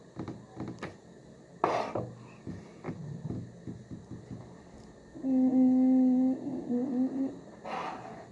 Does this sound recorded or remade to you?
recorded